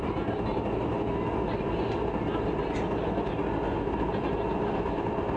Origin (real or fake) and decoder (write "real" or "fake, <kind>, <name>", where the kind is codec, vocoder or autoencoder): real